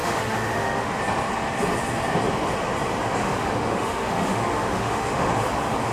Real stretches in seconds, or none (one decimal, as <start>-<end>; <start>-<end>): 1.0-3.2; 5.3-5.9